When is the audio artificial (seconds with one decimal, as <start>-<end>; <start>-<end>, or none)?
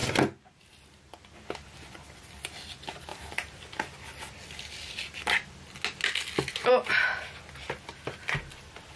none